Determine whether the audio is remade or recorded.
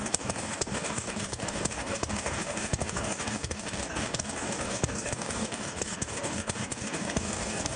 remade